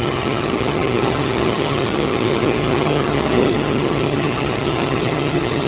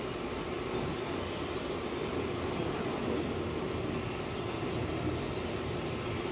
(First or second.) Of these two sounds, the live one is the second